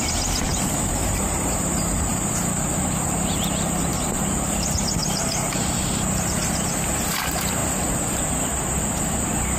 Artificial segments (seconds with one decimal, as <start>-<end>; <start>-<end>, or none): 0.5-2.3; 3.9-4.5; 5.0-6.9